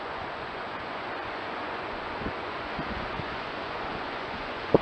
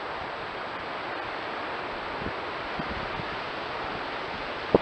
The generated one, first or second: first